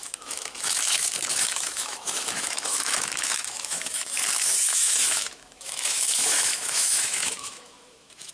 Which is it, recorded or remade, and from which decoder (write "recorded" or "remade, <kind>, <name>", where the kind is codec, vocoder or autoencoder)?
remade, autoencoder, DAC-VAE